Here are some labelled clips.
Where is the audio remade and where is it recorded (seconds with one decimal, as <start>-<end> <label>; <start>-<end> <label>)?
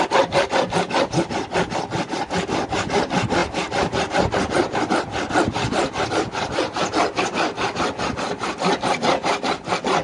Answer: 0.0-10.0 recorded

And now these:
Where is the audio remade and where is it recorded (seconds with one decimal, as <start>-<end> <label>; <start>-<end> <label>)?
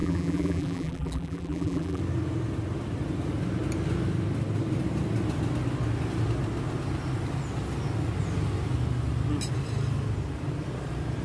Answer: 0.0-2.0 remade; 2.0-11.2 recorded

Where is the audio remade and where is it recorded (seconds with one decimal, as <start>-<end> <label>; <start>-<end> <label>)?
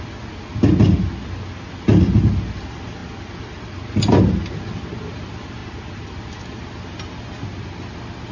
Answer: 0.0-5.6 recorded; 5.6-6.4 remade; 6.4-8.3 recorded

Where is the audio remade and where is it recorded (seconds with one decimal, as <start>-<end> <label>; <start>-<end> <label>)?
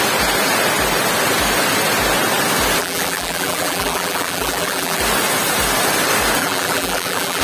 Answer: 0.0-2.8 recorded; 2.8-5.0 remade; 5.0-6.4 recorded; 6.4-7.4 remade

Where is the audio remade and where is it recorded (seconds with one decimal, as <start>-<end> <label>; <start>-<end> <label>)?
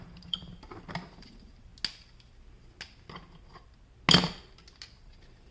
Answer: 0.0-0.5 remade; 0.5-1.1 recorded; 1.1-1.7 remade; 1.7-5.0 recorded; 5.0-5.5 remade